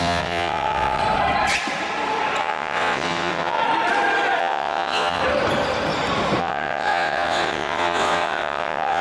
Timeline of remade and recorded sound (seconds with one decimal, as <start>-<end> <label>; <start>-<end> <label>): 0.0-1.0 remade; 1.0-2.4 recorded; 2.4-3.6 remade; 3.6-4.4 recorded; 4.4-5.2 remade; 5.2-6.4 recorded; 6.4-9.0 remade